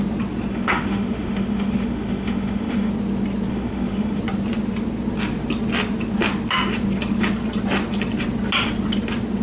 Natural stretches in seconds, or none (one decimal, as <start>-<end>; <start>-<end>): 0.0-0.5; 2.9-3.5; 4.2-9.4